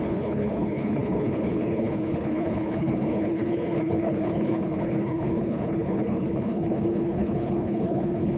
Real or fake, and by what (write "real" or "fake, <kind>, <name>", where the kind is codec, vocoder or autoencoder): fake, codec, HILCodec